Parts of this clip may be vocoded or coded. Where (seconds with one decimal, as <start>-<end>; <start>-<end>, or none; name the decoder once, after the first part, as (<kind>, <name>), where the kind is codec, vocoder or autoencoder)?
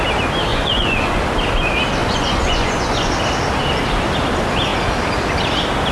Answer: 0.5-1.2 (vocoder, Vocos); 2.0-3.1